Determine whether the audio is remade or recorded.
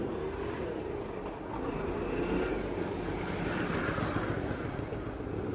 recorded